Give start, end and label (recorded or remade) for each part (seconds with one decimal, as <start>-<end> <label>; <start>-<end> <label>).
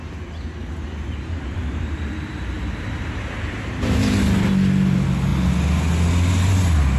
0.0-0.6 recorded; 0.6-4.2 remade; 4.2-7.0 recorded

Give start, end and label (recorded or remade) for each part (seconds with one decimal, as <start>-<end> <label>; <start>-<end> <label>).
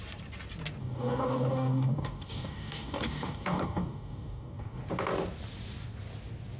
0.0-0.8 recorded; 0.8-4.8 remade; 4.8-6.6 recorded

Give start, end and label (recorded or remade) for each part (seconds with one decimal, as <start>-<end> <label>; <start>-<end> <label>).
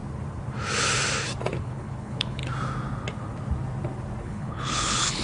0.0-1.6 recorded; 1.6-2.4 remade; 2.4-4.2 recorded; 4.2-5.2 remade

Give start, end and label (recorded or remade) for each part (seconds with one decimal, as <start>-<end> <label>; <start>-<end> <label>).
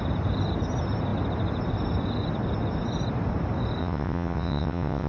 0.0-3.8 recorded; 3.8-5.1 remade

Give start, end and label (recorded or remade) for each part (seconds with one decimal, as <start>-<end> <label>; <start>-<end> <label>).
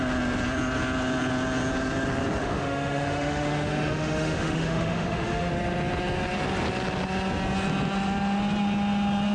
0.0-2.4 recorded; 2.4-5.5 remade; 5.5-9.3 recorded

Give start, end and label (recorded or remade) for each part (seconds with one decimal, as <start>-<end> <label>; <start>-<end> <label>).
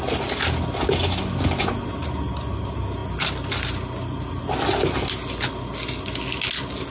0.0-6.9 recorded